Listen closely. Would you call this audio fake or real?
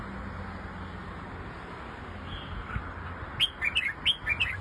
real